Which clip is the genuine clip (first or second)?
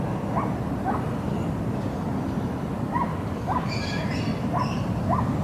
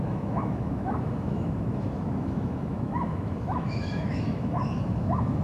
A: first